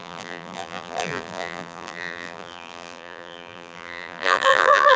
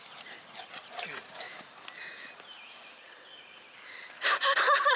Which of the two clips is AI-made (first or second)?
first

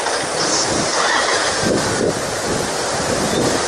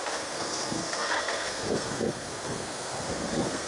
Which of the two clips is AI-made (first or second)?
second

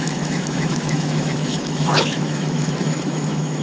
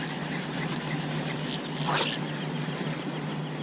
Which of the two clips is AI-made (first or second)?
first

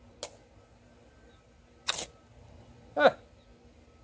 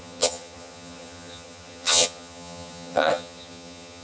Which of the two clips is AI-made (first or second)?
second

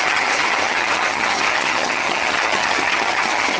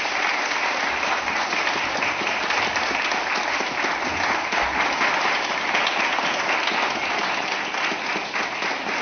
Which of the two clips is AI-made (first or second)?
first